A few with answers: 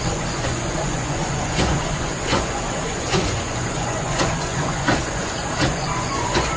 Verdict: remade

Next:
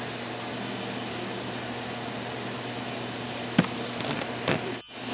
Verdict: recorded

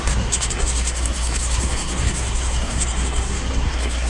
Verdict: remade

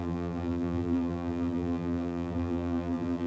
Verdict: remade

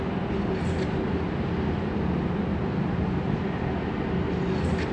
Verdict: recorded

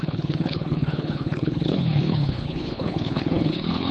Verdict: remade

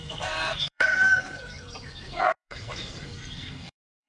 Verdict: remade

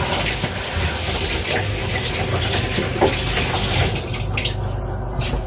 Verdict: recorded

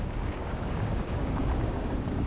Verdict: remade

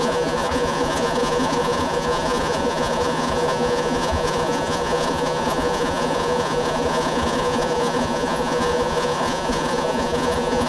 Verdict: remade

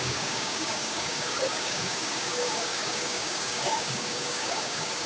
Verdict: remade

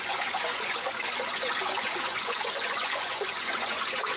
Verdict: remade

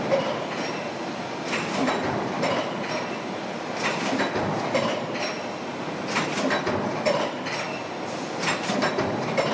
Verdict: recorded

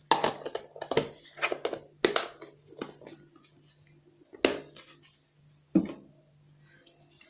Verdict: recorded